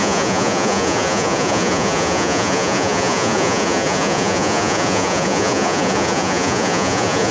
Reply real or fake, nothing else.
fake